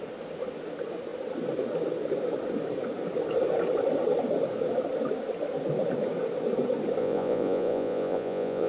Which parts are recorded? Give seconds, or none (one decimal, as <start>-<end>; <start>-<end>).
0.0-7.0